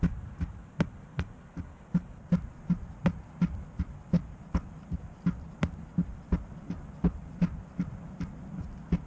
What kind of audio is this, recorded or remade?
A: recorded